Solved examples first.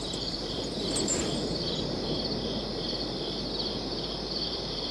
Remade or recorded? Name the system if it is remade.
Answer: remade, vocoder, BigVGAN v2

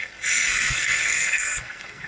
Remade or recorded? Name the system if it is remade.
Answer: remade, codec, SNAC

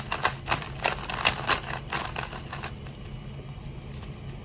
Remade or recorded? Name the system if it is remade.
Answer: recorded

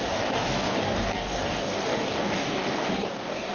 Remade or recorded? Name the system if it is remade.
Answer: remade, codec, DAC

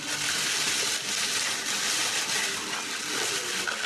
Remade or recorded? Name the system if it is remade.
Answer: recorded